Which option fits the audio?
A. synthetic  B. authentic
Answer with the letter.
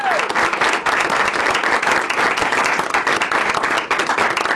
B